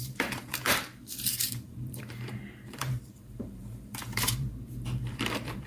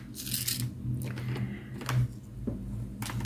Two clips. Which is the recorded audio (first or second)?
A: second